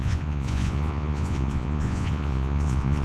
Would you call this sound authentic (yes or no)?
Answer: no